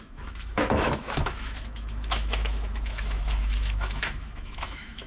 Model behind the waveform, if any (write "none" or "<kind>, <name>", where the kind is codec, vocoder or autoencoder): autoencoder, DAC-VAE